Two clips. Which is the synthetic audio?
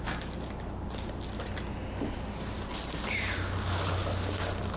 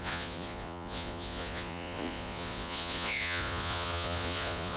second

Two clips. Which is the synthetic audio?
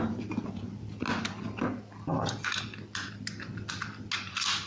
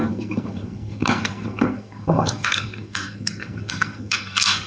second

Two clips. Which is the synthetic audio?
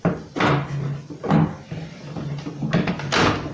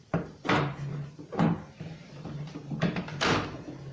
second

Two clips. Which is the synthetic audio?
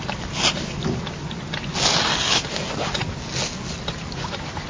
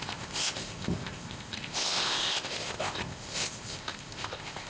second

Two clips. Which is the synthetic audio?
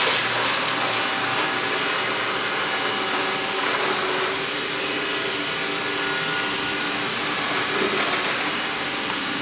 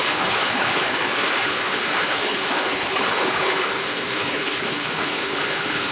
second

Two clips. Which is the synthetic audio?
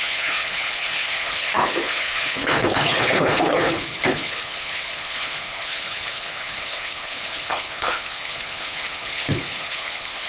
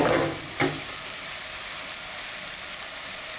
first